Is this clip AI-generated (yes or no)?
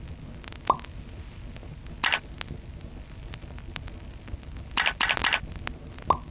no